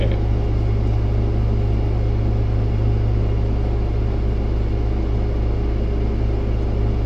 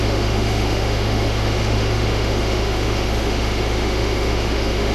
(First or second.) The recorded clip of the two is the first